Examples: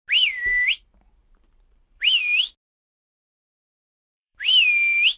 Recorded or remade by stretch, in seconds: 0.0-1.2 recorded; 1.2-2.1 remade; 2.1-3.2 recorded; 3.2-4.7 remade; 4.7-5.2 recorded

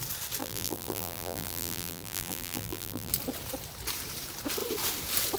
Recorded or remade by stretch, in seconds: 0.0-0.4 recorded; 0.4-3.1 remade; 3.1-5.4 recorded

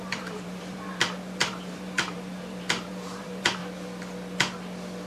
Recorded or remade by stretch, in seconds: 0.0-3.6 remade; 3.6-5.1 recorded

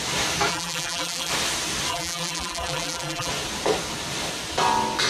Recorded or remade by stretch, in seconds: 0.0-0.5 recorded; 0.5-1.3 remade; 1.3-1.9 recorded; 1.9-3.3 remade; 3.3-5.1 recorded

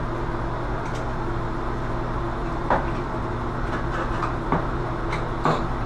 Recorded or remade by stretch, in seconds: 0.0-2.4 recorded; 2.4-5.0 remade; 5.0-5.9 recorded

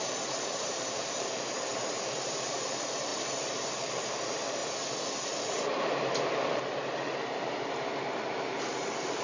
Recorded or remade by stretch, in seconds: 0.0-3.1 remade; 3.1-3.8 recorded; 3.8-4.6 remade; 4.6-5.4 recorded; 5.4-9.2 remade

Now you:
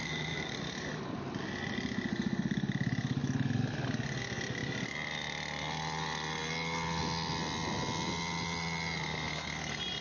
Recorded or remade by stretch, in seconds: 0.0-1.0 remade; 1.0-10.0 recorded